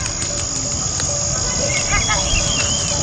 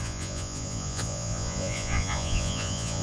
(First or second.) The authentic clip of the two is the first